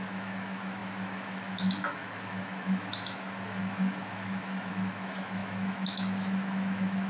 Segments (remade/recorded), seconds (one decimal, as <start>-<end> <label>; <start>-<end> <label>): 0.0-7.1 remade